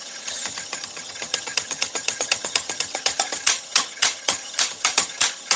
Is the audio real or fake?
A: fake